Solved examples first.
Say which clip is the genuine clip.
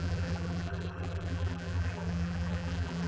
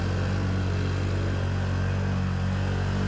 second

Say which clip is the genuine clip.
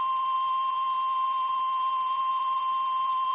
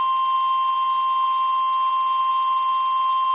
second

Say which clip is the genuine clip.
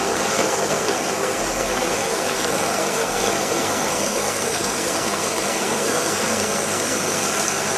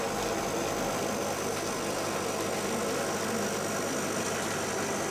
second